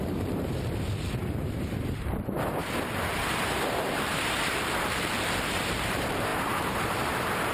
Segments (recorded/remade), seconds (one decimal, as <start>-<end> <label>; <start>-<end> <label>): 0.0-2.6 remade; 2.6-3.4 recorded; 3.4-7.5 remade